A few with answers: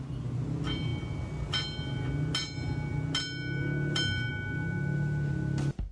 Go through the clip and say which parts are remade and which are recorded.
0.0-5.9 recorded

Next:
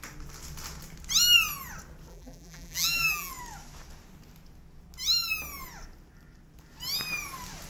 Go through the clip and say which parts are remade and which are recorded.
0.0-2.1 recorded; 2.1-3.3 remade; 3.3-7.7 recorded

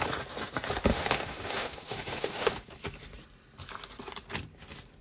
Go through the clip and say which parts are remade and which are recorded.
0.0-0.9 recorded; 0.9-2.5 remade; 2.5-5.0 recorded

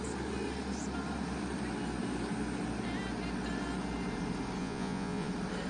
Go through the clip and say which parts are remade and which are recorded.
0.0-4.6 recorded; 4.6-5.3 remade; 5.3-5.7 recorded